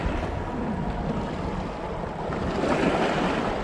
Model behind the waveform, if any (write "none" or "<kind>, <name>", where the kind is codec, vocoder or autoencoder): none